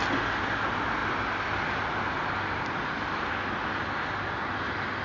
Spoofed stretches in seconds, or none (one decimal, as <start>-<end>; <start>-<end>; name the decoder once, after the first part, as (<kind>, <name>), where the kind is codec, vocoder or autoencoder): none